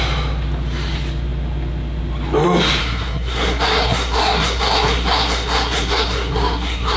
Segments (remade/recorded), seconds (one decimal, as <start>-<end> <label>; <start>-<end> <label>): 0.0-2.8 recorded; 2.8-7.0 remade